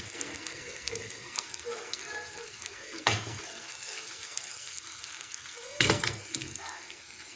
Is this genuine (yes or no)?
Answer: no